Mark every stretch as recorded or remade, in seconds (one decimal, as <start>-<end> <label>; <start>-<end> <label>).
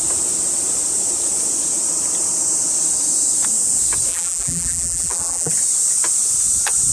0.0-4.1 recorded; 4.1-5.5 remade; 5.5-6.9 recorded